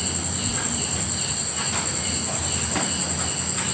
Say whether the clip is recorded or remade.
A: recorded